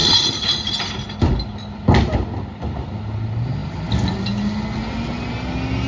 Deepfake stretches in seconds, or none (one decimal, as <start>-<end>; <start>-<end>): 0.0-0.7